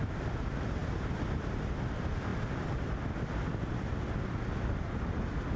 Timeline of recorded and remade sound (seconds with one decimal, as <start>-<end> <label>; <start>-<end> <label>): 0.0-5.6 recorded

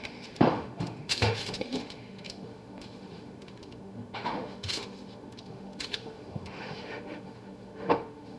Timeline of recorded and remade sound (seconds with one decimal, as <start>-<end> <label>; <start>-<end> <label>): 0.0-8.4 remade

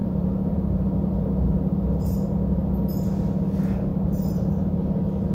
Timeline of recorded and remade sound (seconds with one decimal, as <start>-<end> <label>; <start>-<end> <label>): 0.0-2.7 remade; 2.7-3.9 recorded; 3.9-4.5 remade; 4.5-5.3 recorded

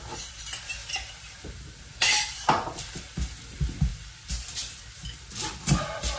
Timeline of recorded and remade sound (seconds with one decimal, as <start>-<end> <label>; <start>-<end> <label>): 0.0-3.9 recorded; 3.9-4.5 remade; 4.5-6.2 recorded

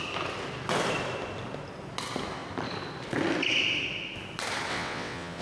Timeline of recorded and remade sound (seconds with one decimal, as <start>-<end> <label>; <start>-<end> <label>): 0.0-4.7 recorded; 4.7-5.4 remade

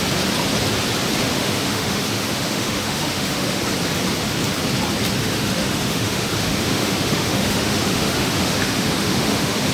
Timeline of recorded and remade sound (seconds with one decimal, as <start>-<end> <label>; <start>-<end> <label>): 0.0-1.2 recorded; 1.2-3.6 remade; 3.6-5.2 recorded; 5.2-9.7 remade